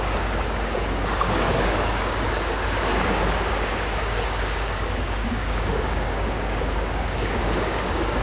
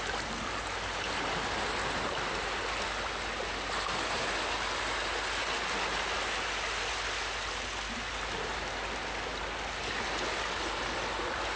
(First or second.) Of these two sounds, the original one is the second